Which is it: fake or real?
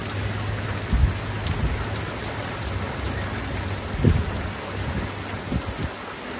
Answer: real